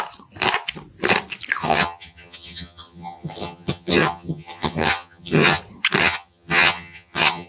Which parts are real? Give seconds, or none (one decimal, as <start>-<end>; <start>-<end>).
0.0-1.6; 5.6-6.0